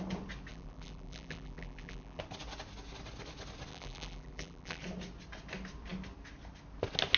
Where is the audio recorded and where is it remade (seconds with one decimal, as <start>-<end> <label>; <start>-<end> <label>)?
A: 0.0-0.5 recorded; 0.5-2.2 remade; 2.2-3.7 recorded; 3.7-4.8 remade; 4.8-7.2 recorded